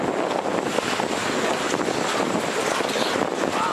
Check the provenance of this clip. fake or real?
real